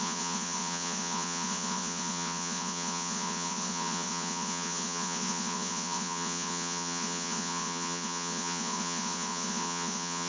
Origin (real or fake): fake